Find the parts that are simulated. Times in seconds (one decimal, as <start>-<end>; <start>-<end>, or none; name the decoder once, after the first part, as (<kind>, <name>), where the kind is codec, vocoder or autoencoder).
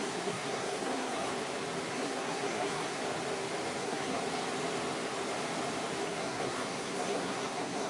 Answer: 0.0-1.3 (codec, SNAC); 1.9-3.0; 3.8-4.2; 6.0-7.9